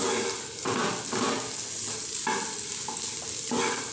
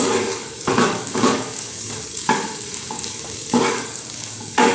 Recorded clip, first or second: first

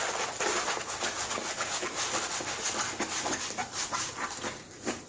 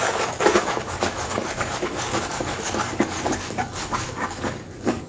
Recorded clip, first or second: first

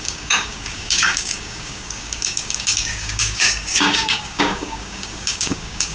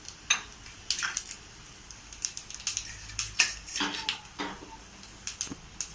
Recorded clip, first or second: second